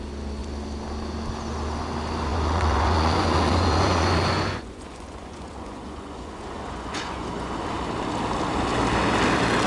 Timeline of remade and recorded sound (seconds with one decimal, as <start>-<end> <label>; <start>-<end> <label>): 0.0-2.3 recorded; 2.3-7.5 remade; 7.5-9.7 recorded